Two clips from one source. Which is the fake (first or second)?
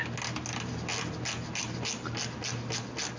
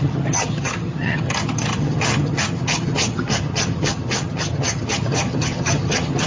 second